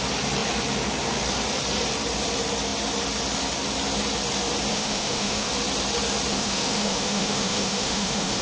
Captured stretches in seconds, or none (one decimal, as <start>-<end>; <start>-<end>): 0.0-4.7; 5.5-6.3